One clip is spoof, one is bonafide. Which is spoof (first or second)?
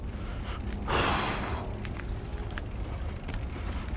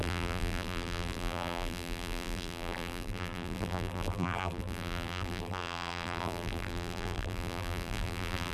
second